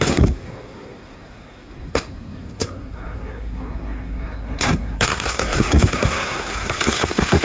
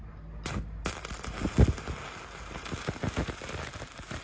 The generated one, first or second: first